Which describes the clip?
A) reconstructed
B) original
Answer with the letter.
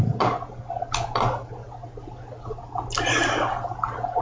B